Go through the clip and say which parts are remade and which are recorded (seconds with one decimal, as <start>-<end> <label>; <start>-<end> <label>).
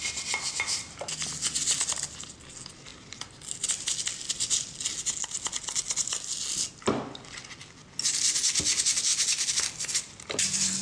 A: 0.0-10.8 recorded